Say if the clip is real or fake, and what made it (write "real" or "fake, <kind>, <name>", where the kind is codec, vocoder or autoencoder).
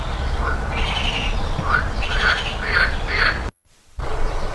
fake, vocoder, Vocos